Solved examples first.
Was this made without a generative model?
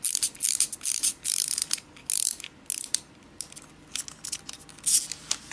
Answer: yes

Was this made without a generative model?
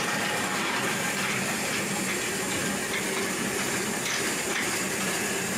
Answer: yes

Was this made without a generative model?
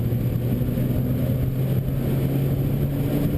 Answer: yes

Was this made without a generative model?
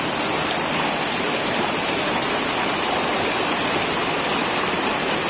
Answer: yes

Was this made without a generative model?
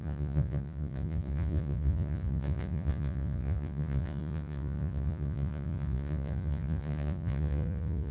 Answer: no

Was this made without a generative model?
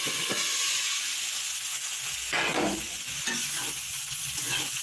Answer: no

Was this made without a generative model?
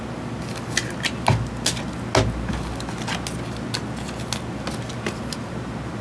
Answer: yes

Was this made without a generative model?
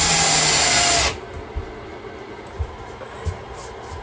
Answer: yes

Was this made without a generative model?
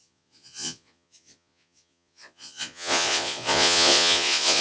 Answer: no